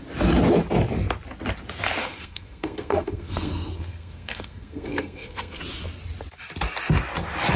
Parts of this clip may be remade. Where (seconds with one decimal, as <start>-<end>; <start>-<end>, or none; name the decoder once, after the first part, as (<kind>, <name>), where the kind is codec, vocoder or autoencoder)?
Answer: 2.0-5.6 (codec, SNAC)